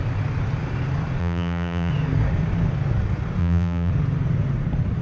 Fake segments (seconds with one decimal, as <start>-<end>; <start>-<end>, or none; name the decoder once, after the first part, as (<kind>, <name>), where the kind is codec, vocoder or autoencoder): 1.2-1.9 (vocoder, BigVGAN v2); 3.4-3.9